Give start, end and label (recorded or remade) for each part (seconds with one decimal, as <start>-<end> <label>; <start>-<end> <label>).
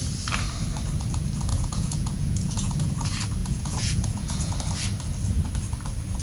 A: 0.0-1.5 recorded; 1.5-2.9 remade; 2.9-3.4 recorded; 3.4-4.5 remade; 4.5-6.2 recorded